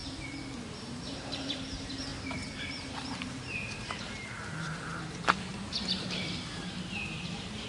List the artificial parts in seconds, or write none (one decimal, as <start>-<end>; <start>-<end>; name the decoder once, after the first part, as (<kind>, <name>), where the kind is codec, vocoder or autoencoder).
0.6-7.7 (vocoder, BigVGAN v2)